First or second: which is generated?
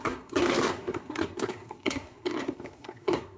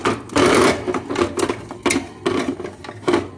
first